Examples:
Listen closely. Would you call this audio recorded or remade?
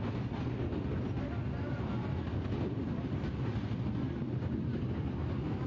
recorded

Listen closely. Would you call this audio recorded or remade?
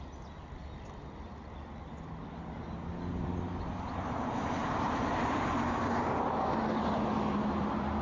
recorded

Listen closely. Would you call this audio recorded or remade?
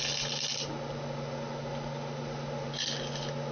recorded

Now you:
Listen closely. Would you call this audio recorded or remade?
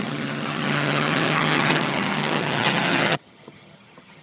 remade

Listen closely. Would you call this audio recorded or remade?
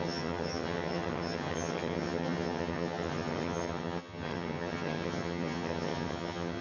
remade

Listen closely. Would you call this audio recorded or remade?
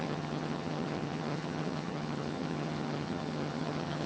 remade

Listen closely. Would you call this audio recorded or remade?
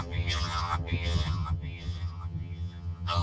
remade